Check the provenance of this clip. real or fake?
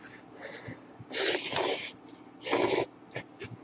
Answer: real